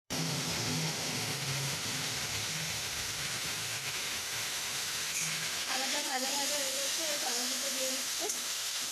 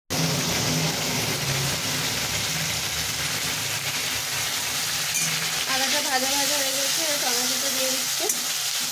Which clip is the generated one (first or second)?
first